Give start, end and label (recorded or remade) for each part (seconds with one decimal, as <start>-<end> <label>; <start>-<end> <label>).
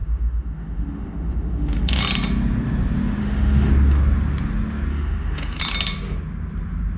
0.0-2.0 remade; 2.0-3.2 recorded; 3.2-3.7 remade; 3.7-4.9 recorded; 4.9-5.6 remade; 5.6-7.0 recorded